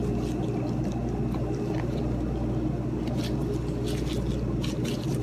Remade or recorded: recorded